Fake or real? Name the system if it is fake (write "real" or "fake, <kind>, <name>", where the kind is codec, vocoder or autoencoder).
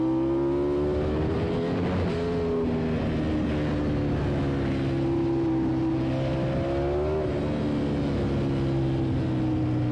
real